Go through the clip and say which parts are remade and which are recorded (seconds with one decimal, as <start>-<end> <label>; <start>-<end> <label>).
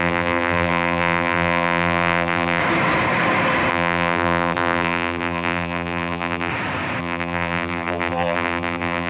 0.0-2.6 remade; 2.6-3.7 recorded; 3.7-6.5 remade; 6.5-7.0 recorded; 7.0-9.1 remade